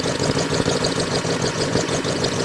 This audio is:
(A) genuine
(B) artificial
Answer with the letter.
B